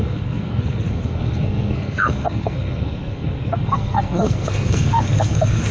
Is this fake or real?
fake